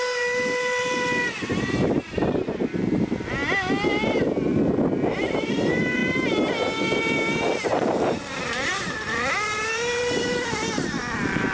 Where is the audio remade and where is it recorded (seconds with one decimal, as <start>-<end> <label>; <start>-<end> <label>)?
0.0-3.4 remade; 3.4-4.9 recorded; 4.9-11.5 remade